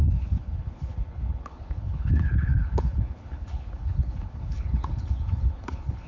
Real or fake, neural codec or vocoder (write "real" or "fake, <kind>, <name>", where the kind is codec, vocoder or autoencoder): fake, codec, HILCodec